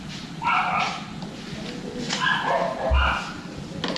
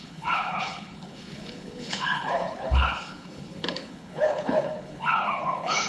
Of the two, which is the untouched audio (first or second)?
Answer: first